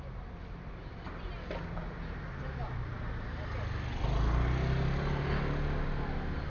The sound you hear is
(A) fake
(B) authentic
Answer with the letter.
B